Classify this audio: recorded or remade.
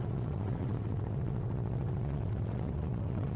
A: remade